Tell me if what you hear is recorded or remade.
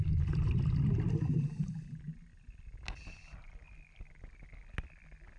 recorded